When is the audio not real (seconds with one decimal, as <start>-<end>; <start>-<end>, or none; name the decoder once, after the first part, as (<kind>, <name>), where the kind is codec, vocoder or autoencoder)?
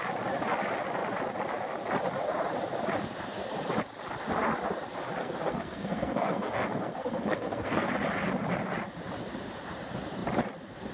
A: 5.2-7.9 (codec, SNAC)